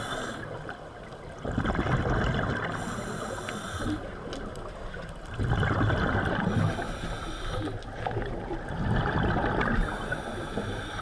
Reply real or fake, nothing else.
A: real